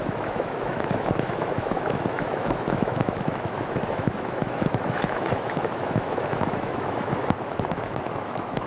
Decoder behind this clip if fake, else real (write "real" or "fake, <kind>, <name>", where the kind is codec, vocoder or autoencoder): fake, autoencoder, DAC-VAE